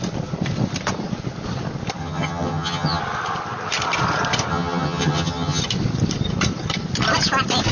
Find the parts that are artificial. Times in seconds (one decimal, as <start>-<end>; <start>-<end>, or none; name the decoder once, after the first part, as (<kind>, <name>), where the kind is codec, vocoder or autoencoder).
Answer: 2.0-3.0 (vocoder, HiFi-GAN); 4.5-5.6

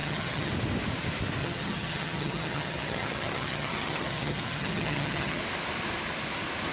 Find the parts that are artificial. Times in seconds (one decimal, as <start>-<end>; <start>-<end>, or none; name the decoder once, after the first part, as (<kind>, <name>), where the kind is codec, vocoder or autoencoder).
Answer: 0.0-0.5 (vocoder, HiFi-GAN); 1.4-5.4

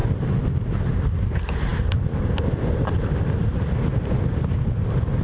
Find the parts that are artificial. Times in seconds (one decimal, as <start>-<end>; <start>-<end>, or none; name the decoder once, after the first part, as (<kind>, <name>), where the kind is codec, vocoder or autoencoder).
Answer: none

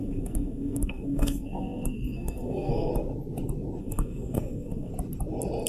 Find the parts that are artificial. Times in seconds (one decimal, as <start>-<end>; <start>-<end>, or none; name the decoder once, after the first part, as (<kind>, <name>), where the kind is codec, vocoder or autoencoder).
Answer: 0.0-2.9 (codec, SNAC); 3.8-4.9